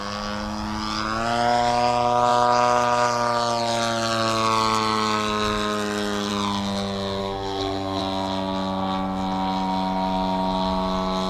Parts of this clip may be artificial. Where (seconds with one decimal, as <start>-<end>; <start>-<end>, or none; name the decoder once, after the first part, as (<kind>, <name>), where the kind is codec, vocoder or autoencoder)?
7.2-8.0 (codec, SNAC)